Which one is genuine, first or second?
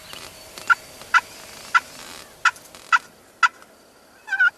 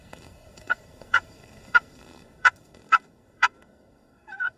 first